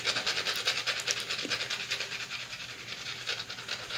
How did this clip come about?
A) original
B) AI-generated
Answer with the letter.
A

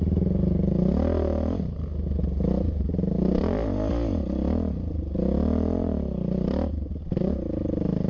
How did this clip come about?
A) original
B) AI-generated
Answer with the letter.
A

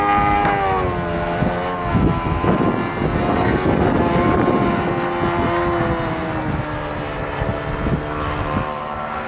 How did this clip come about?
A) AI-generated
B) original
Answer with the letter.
B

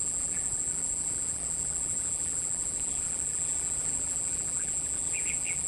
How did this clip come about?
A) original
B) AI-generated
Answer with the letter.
B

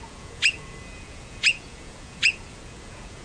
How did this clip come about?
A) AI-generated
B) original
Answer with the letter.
A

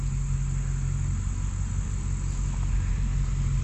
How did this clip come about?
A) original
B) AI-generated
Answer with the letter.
A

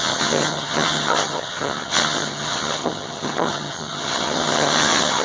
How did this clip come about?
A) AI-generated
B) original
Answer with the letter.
A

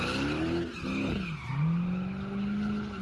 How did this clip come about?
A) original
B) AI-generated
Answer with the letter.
A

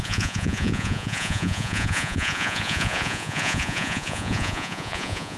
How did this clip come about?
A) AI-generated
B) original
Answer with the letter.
A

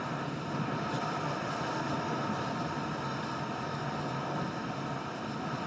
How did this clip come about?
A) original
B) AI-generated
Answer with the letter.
A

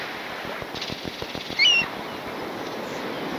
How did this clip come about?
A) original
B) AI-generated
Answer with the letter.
A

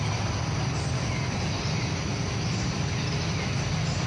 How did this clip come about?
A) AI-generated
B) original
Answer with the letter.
B